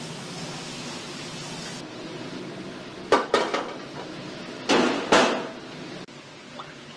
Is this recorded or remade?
recorded